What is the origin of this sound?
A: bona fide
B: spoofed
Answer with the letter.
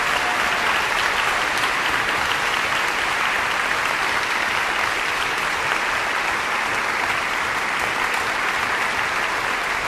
A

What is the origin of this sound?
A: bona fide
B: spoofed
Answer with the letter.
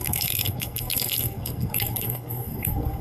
B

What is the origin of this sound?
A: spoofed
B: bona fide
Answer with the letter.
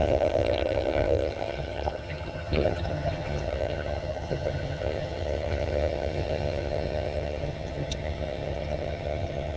A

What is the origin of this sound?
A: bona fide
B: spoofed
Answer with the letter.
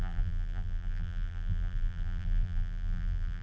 B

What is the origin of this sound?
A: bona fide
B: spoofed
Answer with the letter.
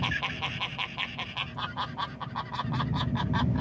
A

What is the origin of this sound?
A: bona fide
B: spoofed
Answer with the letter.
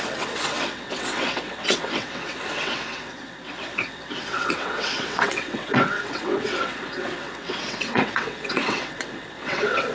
B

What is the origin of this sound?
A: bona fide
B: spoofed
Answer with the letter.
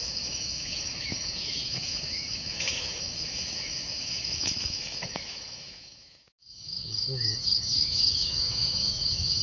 B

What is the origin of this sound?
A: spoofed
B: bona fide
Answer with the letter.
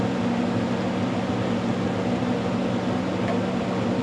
B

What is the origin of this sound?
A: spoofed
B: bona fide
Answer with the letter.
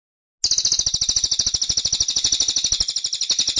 B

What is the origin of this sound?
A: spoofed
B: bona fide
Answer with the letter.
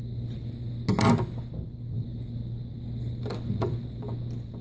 B